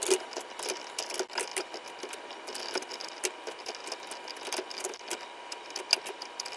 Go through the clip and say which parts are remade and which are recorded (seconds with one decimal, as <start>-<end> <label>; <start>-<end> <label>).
0.0-6.6 recorded